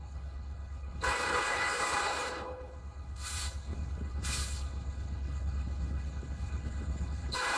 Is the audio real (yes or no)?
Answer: no